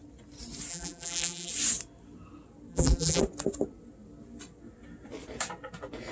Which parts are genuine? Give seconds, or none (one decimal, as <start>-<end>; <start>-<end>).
0.0-0.7; 1.5-2.7; 3.2-6.1